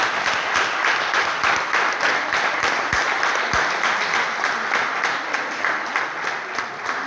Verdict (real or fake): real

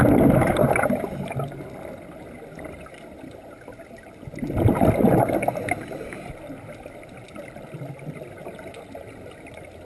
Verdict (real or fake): real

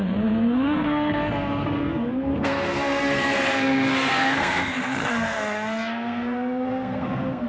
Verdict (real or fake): fake